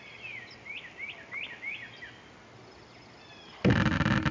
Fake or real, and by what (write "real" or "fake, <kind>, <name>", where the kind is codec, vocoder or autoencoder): real